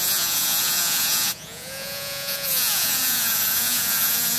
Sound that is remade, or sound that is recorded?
remade